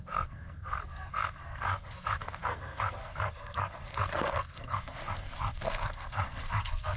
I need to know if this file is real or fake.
fake